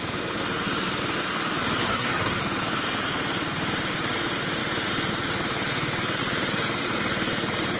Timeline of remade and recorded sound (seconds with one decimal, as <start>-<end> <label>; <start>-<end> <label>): 0.0-1.8 recorded; 1.8-2.4 remade; 2.4-7.8 recorded